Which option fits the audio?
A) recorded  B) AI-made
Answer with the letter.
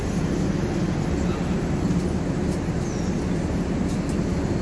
A